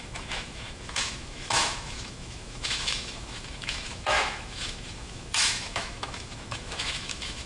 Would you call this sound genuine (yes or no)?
no